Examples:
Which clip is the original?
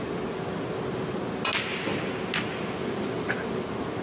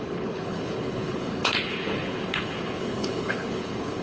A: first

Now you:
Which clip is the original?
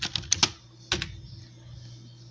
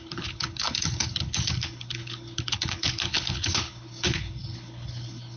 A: first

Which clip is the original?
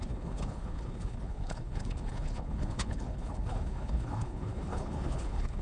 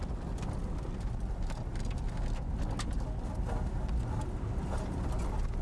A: second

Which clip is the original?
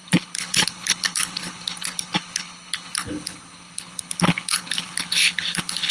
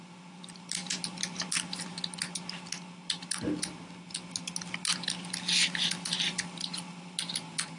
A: second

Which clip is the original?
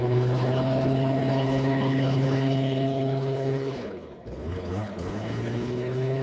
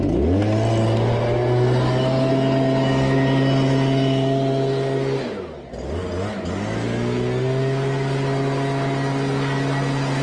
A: second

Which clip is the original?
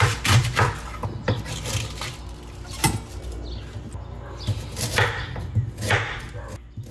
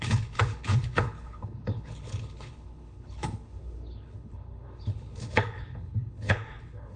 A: first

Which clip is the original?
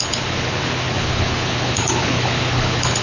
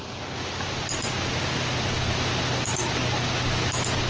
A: second